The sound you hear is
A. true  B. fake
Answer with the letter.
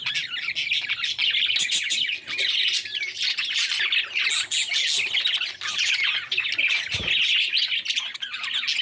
A